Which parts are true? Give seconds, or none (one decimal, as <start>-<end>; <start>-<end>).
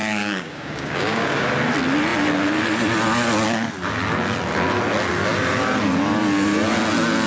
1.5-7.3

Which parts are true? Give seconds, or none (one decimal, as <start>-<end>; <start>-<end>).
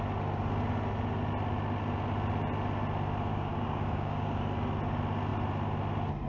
0.0-3.3; 4.4-6.3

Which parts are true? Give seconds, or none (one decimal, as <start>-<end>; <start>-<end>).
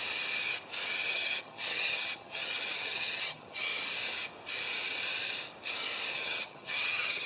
0.0-1.1; 3.7-6.1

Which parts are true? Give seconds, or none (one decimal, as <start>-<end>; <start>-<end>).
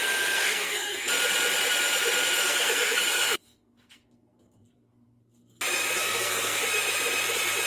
1.1-2.4; 5.6-6.0; 6.6-7.7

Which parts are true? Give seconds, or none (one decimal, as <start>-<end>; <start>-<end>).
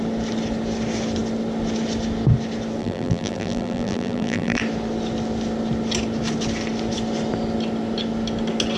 0.0-2.8; 4.6-8.8